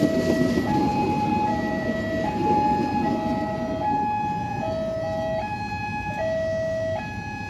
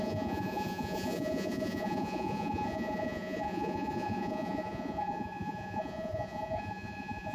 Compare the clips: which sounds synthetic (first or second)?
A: second